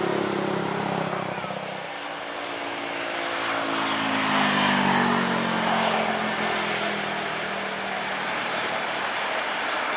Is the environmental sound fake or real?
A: real